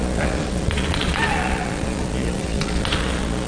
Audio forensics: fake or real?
fake